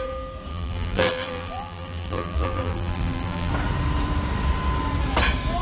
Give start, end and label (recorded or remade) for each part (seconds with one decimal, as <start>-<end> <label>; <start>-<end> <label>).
0.0-0.5 recorded; 0.5-3.5 remade; 3.5-5.6 recorded